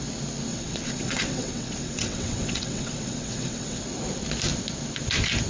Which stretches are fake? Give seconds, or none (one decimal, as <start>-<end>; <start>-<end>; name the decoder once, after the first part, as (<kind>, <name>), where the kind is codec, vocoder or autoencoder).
0.5-3.8 (vocoder, WaveNeXt)

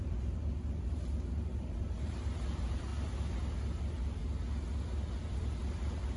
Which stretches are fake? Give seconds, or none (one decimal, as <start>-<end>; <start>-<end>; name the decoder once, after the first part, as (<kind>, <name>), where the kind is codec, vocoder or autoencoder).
0.0-2.9 (vocoder, BigVGAN v2); 3.8-4.2; 5.2-6.2

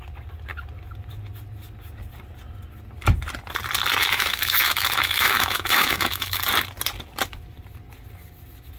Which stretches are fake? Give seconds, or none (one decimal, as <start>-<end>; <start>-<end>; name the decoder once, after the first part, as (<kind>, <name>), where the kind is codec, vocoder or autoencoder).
4.0-6.4 (autoencoder, DAC-VAE)

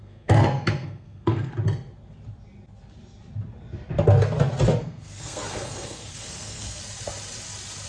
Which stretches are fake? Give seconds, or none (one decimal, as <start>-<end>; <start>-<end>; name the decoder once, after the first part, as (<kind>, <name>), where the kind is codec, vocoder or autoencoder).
0.0-1.5 (codec, SNAC); 4.8-6.8